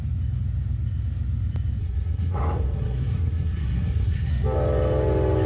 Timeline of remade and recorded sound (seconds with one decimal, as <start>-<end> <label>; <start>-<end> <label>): 0.0-1.8 recorded; 1.8-4.3 remade; 4.3-5.5 recorded